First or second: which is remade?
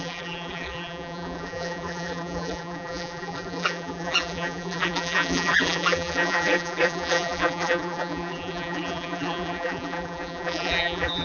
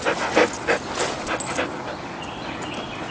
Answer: first